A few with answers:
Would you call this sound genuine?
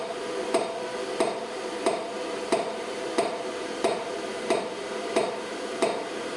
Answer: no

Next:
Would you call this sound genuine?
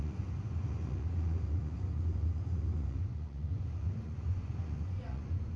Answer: no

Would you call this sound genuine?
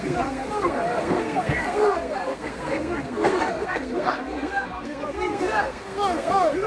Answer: no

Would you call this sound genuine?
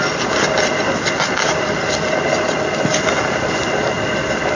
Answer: yes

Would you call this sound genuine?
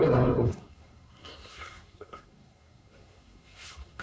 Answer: no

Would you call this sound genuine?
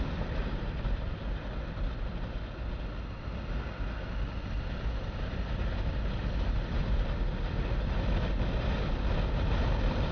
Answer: yes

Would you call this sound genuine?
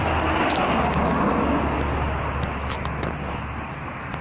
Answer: yes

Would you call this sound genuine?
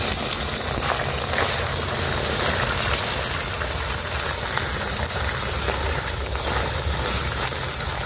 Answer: yes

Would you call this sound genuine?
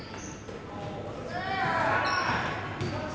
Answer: yes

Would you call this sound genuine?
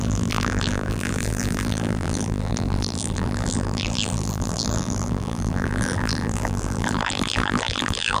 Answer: no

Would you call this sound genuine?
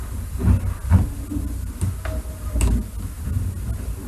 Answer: yes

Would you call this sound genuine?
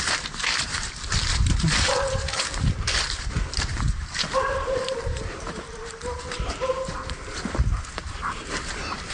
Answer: no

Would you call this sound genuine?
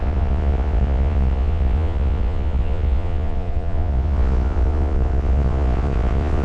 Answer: no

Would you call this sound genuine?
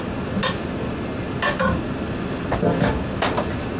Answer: yes